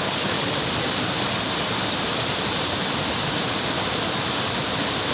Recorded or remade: remade